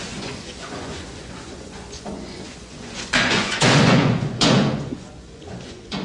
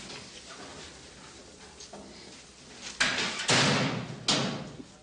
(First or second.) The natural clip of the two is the second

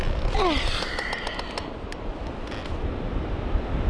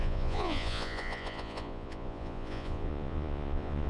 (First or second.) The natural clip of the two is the first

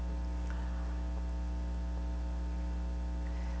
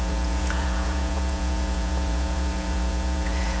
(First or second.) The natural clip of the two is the first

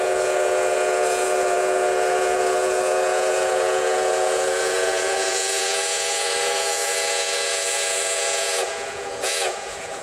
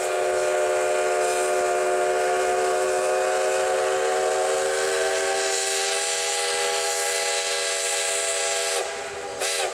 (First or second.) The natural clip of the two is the second